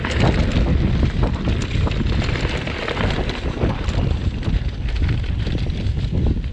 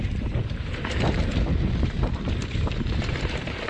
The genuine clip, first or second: first